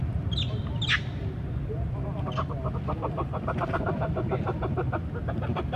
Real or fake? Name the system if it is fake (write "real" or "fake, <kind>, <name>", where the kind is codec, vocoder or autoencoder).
real